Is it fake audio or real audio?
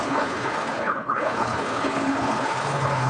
fake